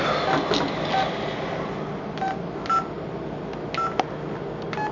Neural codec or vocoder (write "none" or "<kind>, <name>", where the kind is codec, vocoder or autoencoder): none